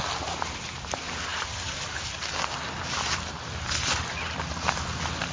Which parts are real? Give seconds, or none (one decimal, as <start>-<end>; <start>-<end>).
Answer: 0.0-5.3